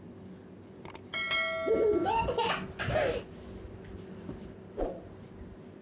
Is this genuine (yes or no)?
yes